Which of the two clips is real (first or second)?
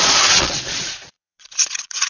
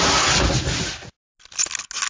second